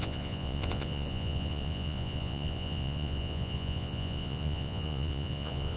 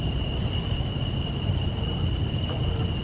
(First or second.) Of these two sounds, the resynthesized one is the first